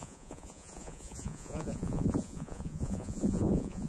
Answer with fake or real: fake